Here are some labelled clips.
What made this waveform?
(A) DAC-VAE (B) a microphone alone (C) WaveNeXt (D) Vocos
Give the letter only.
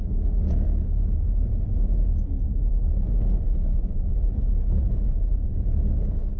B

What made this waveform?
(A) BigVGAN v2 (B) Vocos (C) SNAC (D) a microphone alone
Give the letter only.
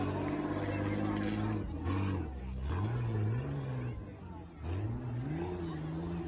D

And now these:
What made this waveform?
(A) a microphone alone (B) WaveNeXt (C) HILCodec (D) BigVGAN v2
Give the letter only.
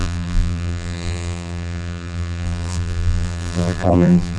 D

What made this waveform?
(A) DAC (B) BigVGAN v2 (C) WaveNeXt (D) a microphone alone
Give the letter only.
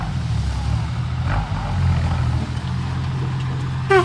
D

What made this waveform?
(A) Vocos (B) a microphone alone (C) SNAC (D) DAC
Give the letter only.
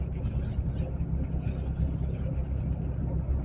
B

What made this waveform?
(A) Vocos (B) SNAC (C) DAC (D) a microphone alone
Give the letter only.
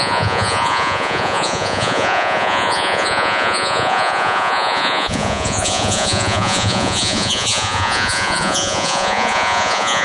A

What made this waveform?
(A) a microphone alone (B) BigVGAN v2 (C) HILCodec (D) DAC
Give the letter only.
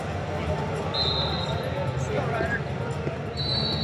A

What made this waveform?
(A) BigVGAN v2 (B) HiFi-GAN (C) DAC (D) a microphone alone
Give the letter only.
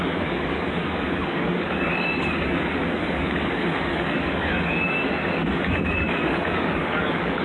C